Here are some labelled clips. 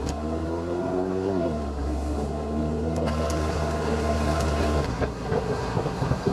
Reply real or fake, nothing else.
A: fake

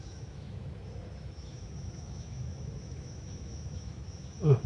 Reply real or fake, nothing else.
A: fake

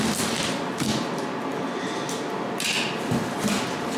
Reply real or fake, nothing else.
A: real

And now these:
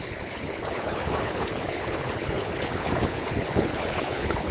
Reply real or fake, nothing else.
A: fake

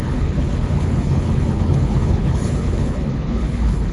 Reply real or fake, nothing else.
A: fake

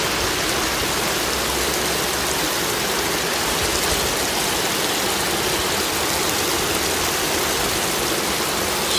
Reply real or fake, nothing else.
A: real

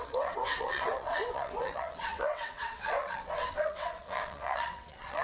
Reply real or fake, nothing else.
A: fake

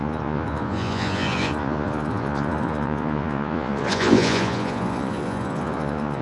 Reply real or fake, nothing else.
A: fake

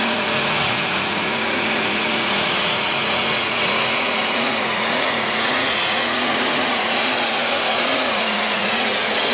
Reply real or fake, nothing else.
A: fake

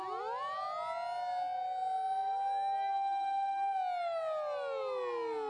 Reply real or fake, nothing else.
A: real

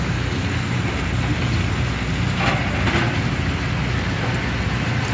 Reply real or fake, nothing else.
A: real